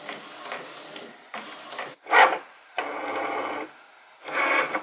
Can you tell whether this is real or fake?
real